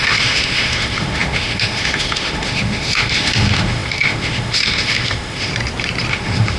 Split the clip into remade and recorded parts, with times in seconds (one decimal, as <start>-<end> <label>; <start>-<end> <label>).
0.0-5.5 remade; 5.5-6.1 recorded; 6.1-6.6 remade